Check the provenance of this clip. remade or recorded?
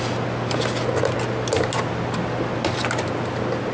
recorded